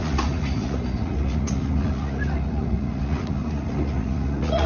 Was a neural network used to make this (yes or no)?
yes